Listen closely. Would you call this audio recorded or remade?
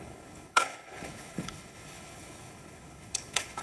remade